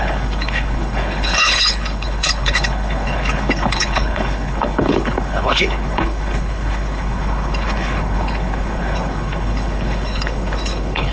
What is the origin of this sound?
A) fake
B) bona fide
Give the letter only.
A